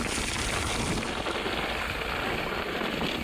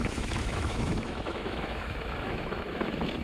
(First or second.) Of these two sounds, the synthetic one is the second